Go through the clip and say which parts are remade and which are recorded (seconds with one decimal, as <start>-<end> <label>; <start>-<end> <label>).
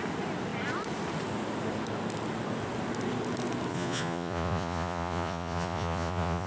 0.0-3.7 recorded; 3.7-6.5 remade